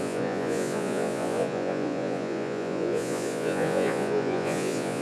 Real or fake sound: fake